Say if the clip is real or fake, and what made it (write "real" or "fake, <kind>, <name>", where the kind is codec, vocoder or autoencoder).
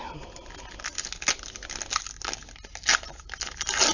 real